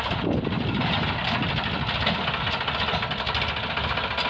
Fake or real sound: real